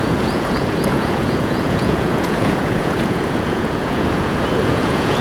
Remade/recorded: remade